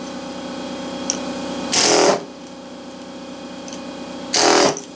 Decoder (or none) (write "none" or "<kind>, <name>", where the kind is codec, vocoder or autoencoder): none